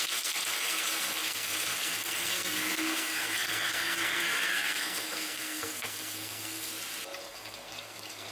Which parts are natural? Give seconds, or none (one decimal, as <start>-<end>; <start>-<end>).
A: 6.7-7.2